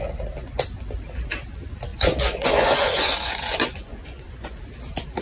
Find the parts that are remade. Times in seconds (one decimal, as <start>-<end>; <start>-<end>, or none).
1.9-4.6